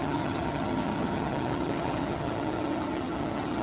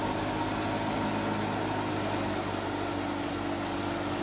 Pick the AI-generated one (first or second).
first